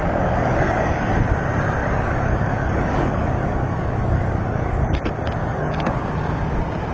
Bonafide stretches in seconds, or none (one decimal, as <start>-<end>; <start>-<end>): 1.1-1.8; 5.0-5.4; 6.1-6.9